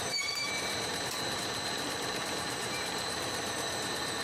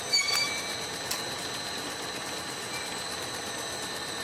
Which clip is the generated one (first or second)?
first